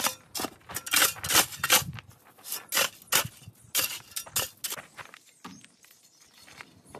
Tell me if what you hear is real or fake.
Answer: real